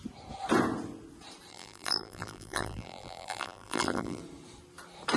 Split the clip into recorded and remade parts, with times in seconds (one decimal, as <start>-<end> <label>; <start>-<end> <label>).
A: 0.0-1.5 recorded; 1.5-4.2 remade; 4.2-5.2 recorded